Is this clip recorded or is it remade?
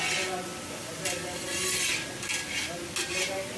recorded